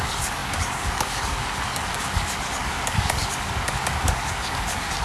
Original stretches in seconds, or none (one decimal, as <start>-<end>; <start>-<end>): none